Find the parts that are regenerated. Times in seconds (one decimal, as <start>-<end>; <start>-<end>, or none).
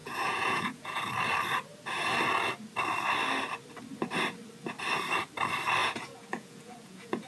0.0-1.0; 5.8-7.3